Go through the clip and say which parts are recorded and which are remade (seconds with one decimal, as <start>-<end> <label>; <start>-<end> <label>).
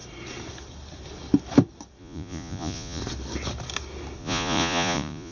0.0-2.0 recorded; 2.0-3.0 remade; 3.0-4.2 recorded; 4.2-5.3 remade